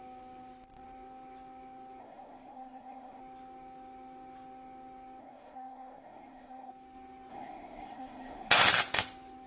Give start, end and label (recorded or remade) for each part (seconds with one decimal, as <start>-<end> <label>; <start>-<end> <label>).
0.0-2.0 recorded; 2.0-3.2 remade; 3.2-5.2 recorded; 5.2-6.7 remade; 6.7-7.3 recorded; 7.3-8.5 remade; 8.5-9.5 recorded